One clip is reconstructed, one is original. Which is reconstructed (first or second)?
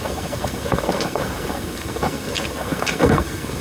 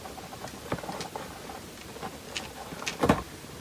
first